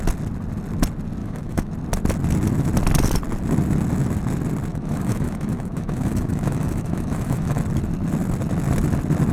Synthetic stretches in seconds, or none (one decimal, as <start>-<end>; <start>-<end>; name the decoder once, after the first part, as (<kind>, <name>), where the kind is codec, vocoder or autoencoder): 1.2-1.7 (autoencoder, DAC-VAE); 4.7-7.6